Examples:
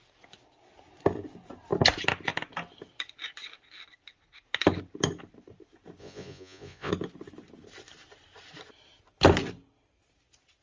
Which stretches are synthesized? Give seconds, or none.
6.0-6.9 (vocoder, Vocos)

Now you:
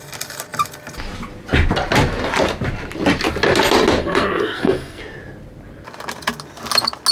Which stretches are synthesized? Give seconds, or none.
4.0-5.0 (codec, SNAC)

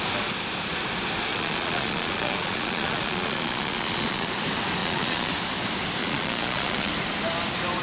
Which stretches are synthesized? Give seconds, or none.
1.3-4.3 (vocoder, Vocos); 4.8-5.3; 6.0-6.9

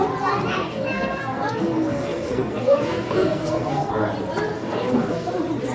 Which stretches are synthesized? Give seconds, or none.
0.5-3.9 (codec, SNAC); 4.5-5.3